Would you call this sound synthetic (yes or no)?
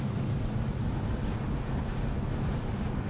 no